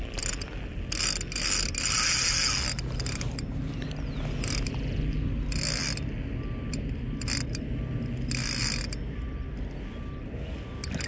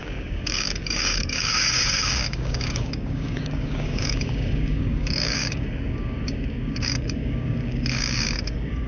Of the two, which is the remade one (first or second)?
second